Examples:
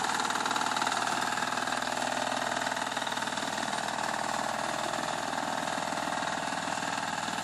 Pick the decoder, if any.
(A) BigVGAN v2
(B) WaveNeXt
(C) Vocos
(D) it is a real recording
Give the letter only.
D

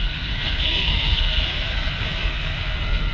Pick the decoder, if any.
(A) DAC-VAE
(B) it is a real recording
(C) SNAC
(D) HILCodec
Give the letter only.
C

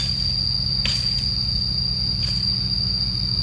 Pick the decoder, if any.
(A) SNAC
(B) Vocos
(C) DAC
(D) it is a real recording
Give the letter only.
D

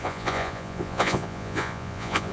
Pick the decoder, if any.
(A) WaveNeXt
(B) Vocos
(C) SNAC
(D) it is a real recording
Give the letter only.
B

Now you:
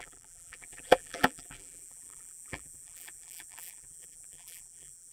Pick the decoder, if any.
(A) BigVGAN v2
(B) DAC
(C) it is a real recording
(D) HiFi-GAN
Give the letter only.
A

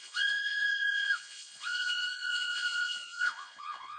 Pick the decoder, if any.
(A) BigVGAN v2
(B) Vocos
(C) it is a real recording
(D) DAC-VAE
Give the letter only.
B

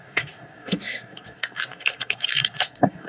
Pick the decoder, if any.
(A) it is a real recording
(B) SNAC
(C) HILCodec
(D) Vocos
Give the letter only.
B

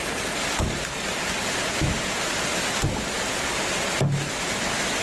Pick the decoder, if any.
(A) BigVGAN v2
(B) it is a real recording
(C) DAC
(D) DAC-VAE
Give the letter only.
B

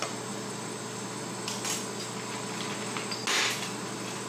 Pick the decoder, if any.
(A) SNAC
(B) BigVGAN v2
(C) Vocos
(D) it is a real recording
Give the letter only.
D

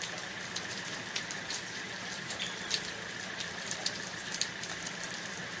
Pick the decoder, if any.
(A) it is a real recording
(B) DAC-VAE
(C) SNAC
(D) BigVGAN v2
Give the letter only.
D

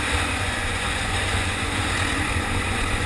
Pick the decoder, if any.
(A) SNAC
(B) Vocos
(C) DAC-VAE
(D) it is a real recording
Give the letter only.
B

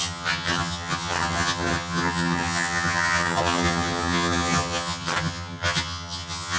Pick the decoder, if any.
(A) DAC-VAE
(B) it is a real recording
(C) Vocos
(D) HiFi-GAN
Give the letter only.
D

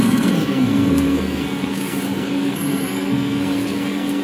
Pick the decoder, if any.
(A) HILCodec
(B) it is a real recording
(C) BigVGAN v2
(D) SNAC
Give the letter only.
D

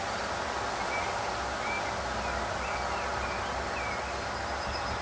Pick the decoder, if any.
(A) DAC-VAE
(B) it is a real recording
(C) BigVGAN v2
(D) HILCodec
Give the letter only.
B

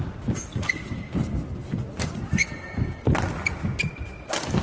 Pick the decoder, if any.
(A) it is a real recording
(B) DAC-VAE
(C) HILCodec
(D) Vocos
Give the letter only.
A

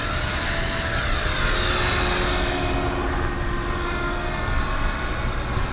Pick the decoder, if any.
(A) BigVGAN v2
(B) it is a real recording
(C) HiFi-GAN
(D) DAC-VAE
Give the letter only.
B